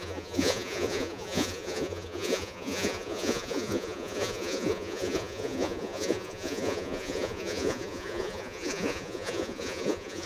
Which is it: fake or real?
fake